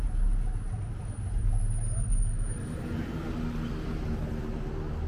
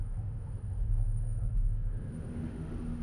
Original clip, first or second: first